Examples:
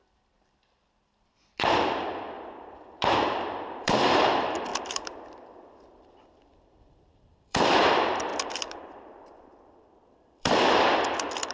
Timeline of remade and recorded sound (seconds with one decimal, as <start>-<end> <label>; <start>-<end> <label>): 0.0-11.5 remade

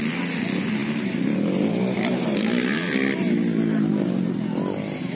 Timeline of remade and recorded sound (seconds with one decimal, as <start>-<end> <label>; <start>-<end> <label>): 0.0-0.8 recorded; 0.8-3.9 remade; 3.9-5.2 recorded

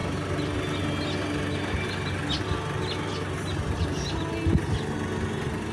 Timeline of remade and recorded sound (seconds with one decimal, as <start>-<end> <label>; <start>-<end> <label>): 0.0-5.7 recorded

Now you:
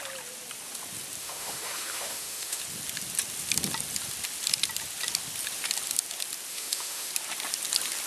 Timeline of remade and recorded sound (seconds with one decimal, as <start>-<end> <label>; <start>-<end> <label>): 0.0-1.2 recorded; 1.2-2.6 remade; 2.6-6.5 recorded; 6.5-7.1 remade; 7.1-8.1 recorded

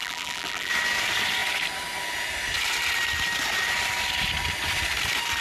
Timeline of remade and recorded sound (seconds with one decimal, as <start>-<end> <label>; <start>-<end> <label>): 0.0-0.7 remade; 0.7-5.4 recorded

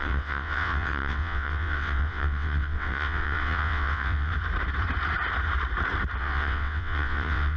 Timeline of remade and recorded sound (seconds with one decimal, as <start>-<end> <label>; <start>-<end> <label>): 0.0-4.3 remade; 4.3-6.2 recorded; 6.2-7.6 remade